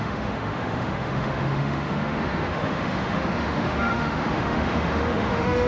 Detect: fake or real fake